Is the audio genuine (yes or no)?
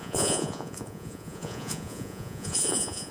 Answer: no